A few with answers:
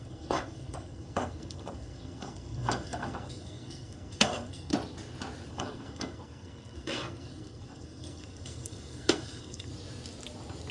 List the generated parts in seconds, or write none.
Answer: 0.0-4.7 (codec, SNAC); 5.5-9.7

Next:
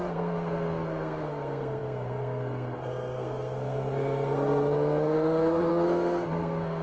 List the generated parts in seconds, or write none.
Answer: 0.0-6.8 (codec, SNAC)

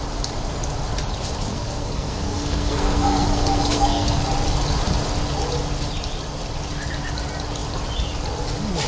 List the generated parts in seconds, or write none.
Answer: 1.5-4.2 (codec, SNAC)

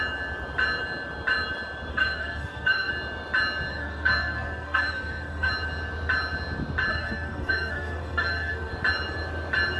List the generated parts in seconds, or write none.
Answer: 1.9-2.9 (codec, SNAC); 3.7-5.5; 6.9-8.7